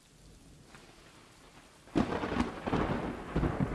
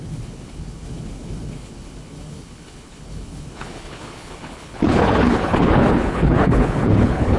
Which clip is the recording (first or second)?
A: first